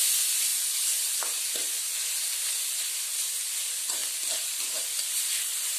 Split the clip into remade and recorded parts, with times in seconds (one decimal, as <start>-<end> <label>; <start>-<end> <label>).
0.0-5.8 recorded